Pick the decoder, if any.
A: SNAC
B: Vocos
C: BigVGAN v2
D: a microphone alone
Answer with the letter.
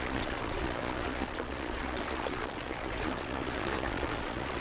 B